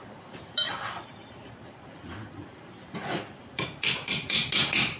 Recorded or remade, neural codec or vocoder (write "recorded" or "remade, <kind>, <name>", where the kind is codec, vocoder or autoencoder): recorded